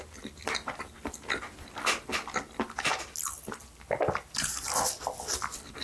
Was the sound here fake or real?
real